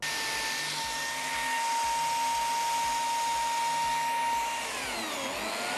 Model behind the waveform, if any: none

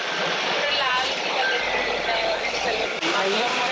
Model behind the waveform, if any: vocoder, BigVGAN v2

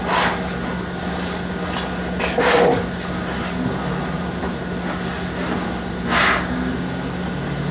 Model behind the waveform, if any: none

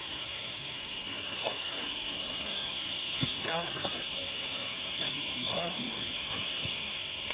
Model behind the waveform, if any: codec, SNAC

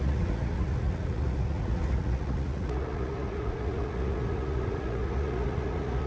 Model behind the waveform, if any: vocoder, Vocos